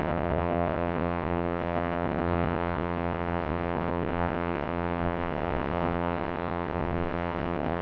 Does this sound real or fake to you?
fake